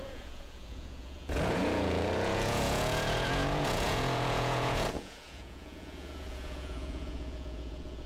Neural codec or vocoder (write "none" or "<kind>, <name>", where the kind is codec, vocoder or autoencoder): vocoder, Vocos